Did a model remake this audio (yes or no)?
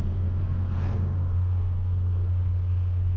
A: yes